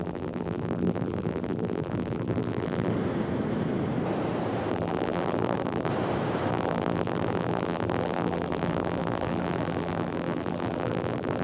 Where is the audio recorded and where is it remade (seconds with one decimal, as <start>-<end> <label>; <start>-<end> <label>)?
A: 0.0-2.9 remade; 2.9-4.7 recorded; 4.7-5.9 remade; 5.9-6.5 recorded; 6.5-11.4 remade